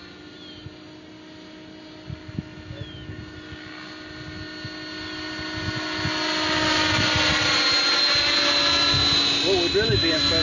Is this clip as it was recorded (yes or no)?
yes